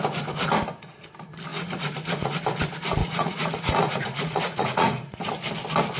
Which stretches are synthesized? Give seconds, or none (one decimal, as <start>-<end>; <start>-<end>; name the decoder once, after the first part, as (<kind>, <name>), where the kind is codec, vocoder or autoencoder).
1.5-2.3 (vocoder, Vocos); 3.0-5.3